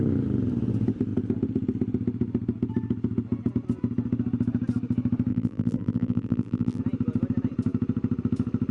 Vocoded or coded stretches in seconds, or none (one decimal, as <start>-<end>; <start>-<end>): 5.3-6.8